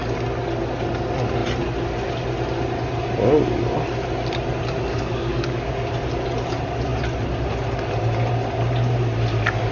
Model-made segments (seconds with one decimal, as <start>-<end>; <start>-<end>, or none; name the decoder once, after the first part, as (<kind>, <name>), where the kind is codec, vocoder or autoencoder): 4.9-5.7 (codec, DAC)

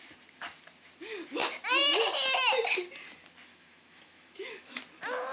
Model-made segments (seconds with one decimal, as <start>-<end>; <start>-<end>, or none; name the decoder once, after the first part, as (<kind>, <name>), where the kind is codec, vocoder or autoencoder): 3.5-4.8 (autoencoder, DAC-VAE)